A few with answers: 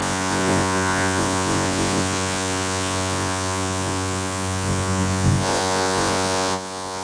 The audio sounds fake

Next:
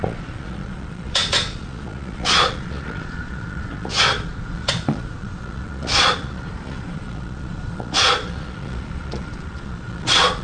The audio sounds fake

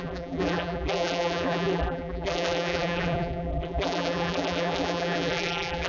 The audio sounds fake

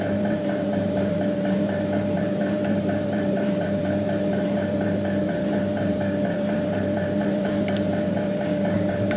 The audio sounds fake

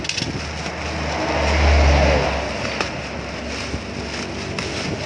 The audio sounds real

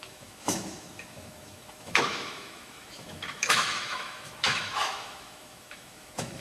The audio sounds fake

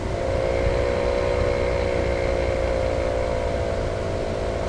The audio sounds real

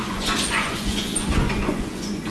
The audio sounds fake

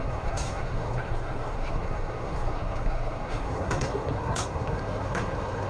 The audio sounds fake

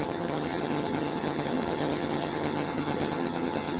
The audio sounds fake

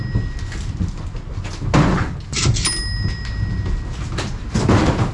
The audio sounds real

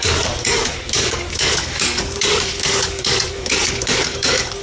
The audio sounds fake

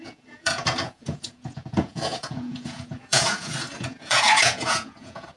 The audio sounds fake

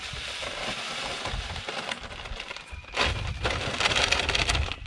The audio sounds real